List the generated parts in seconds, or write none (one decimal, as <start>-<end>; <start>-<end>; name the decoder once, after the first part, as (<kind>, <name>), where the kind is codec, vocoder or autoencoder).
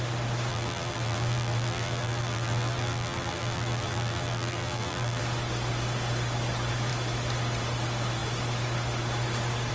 0.5-5.2 (vocoder, BigVGAN v2)